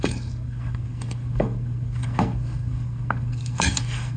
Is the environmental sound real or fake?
fake